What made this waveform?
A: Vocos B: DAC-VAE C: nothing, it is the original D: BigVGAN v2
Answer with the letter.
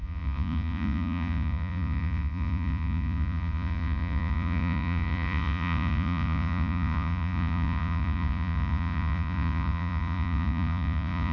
A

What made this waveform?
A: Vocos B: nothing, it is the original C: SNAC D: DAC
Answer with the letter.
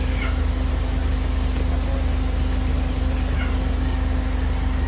B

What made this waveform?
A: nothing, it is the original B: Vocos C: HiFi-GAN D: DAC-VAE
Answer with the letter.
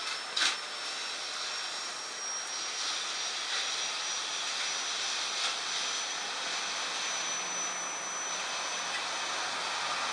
A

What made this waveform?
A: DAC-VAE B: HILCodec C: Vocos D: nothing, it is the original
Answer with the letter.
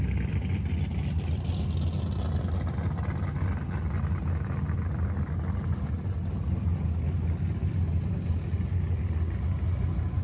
D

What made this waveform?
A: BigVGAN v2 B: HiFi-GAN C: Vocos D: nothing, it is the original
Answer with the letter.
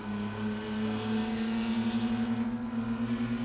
D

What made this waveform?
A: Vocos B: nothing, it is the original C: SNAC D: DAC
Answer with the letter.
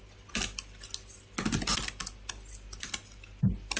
B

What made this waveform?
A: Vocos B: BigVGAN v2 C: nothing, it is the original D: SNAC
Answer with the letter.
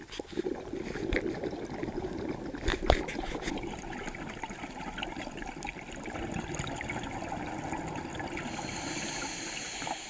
C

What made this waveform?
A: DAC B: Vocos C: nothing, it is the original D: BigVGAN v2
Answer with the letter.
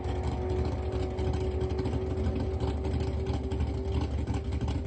C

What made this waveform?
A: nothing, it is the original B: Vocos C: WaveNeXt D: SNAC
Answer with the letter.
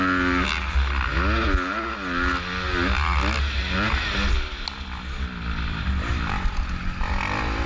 A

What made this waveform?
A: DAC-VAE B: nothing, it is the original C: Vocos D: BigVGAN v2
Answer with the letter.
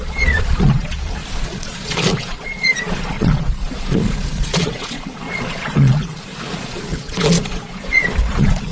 C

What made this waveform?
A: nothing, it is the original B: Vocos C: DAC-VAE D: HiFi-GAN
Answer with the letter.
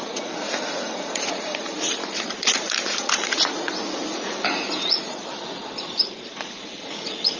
B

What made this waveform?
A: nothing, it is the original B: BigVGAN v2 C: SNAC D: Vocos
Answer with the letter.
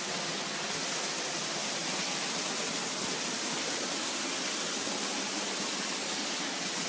A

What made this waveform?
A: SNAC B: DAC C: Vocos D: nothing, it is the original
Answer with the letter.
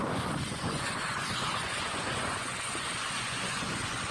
C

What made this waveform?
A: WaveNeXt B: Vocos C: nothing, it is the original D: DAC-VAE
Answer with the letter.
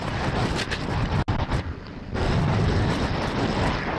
C